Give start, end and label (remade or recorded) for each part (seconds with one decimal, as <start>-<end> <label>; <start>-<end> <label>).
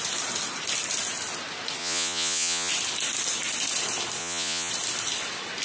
0.0-1.8 recorded; 1.8-2.7 remade; 2.7-4.2 recorded; 4.2-4.7 remade; 4.7-5.6 recorded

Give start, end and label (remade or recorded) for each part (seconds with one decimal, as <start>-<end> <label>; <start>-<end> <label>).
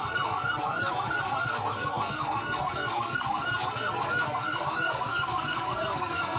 0.0-6.4 remade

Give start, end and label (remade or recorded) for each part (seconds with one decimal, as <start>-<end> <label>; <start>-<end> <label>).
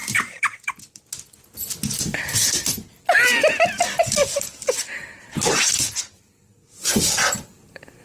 0.0-1.1 remade; 1.1-8.0 recorded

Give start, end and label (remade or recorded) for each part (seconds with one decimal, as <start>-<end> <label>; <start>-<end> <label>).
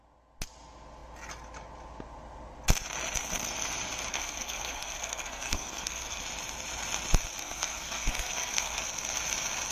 0.0-4.1 recorded; 4.1-6.2 remade; 6.2-7.4 recorded; 7.4-8.8 remade; 8.8-9.7 recorded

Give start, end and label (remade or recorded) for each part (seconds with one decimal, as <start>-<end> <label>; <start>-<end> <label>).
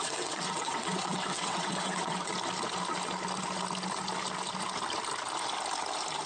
0.0-2.3 remade; 2.3-6.3 recorded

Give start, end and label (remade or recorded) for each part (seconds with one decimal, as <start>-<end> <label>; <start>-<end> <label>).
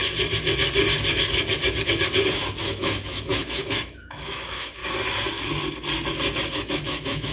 0.0-2.6 recorded; 2.6-4.8 remade; 4.8-6.5 recorded; 6.5-7.3 remade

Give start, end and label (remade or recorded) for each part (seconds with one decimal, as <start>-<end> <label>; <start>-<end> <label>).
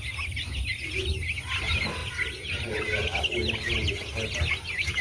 0.0-5.0 recorded